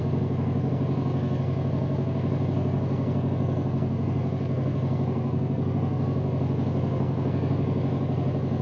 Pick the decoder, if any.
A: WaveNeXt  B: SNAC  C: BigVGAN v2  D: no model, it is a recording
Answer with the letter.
B